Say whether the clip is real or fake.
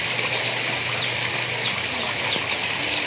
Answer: real